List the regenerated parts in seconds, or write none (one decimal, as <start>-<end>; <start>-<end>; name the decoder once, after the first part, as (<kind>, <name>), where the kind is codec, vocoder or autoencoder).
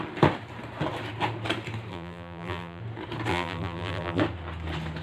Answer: 1.9-2.8 (vocoder, BigVGAN v2); 3.3-4.2